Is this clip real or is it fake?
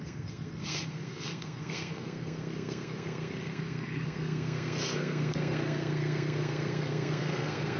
fake